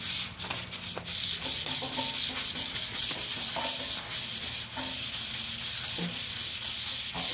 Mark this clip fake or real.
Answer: real